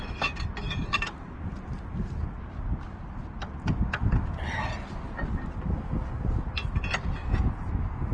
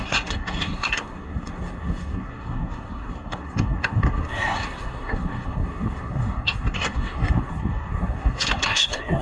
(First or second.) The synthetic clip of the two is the second